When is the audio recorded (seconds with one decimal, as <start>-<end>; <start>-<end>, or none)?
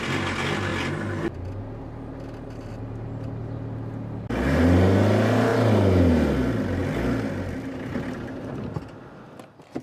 0.0-9.8